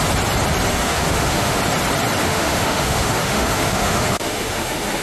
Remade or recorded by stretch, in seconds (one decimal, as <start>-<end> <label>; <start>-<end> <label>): 0.0-0.8 recorded; 0.8-1.6 remade; 1.6-2.2 recorded; 2.2-5.0 remade